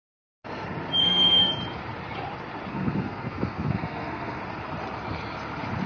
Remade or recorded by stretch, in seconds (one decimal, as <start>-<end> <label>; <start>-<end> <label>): 0.0-1.0 recorded; 1.0-1.5 remade; 1.5-2.7 recorded; 2.7-4.4 remade; 4.4-5.9 recorded